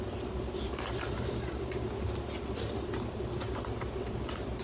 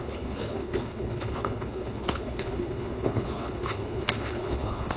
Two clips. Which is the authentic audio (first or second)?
first